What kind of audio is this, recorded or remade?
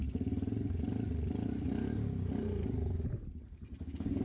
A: recorded